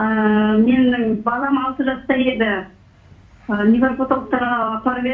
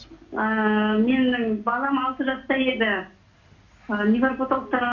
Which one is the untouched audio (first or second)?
second